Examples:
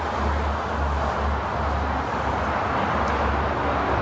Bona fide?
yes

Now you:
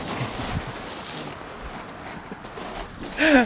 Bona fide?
yes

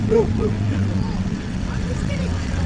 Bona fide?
no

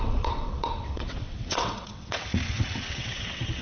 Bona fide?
no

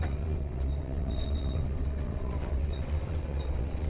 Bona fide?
no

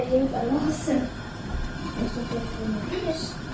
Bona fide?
yes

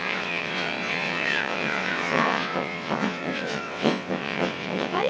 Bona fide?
no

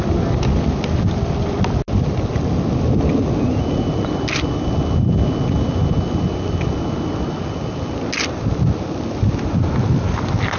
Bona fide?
yes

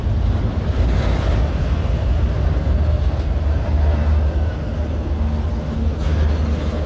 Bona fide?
yes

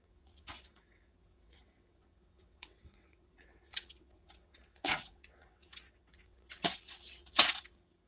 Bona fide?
no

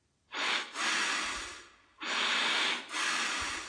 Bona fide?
yes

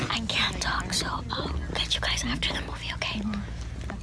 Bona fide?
yes